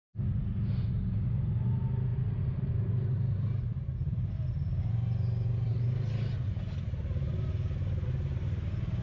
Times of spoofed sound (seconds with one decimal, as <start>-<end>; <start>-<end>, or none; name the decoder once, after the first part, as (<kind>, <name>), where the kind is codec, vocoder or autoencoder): 2.1-4.8 (vocoder, BigVGAN v2)